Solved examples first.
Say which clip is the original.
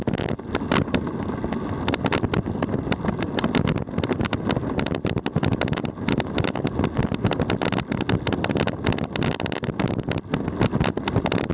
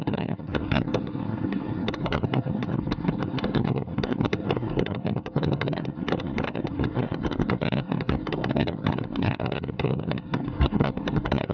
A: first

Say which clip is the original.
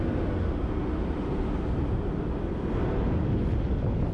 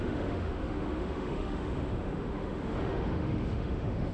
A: first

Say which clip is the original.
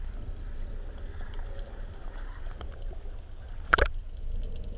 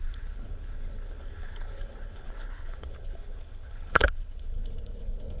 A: first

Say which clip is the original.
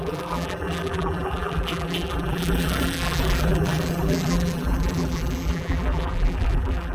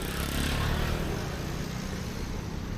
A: second